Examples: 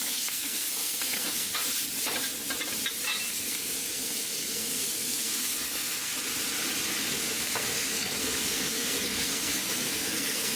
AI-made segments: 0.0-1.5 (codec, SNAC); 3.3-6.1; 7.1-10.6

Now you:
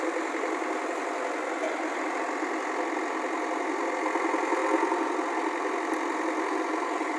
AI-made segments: none